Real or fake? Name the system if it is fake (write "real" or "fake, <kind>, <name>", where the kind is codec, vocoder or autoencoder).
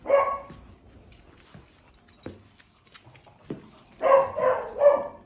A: real